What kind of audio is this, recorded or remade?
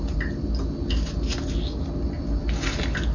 recorded